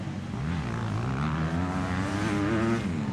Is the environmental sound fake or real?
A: real